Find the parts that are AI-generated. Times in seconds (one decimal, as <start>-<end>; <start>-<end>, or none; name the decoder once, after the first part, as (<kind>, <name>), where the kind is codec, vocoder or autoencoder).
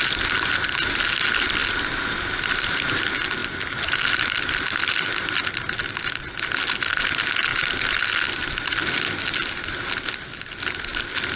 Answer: 1.6-3.0 (vocoder, BigVGAN v2); 3.4-5.2; 7.5-8.5